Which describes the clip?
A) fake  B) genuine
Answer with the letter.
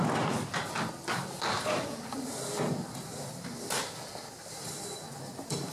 B